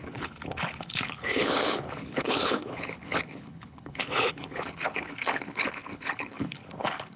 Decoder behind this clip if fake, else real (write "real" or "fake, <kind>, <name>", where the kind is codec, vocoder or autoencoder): fake, codec, HILCodec